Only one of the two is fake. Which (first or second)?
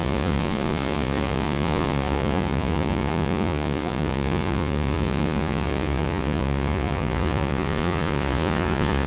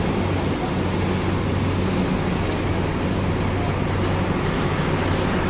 first